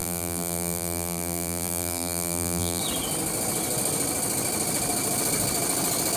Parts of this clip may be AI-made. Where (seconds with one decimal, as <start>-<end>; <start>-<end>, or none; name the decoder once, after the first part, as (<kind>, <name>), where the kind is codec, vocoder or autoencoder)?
0.0-2.8 (vocoder, BigVGAN v2)